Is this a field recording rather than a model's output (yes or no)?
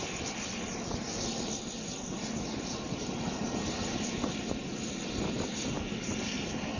yes